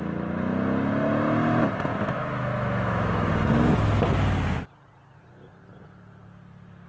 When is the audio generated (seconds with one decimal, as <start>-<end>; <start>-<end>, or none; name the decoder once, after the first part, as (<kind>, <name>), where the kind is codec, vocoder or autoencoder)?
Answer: 1.9-3.3 (autoencoder, DAC-VAE)